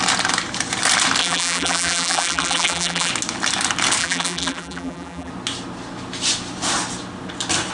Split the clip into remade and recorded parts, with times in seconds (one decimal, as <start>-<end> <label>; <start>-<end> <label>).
0.0-1.2 recorded; 1.2-3.1 remade; 3.1-4.0 recorded; 4.0-5.3 remade; 5.3-7.7 recorded